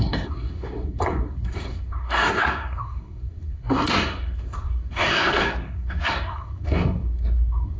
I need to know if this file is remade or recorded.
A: remade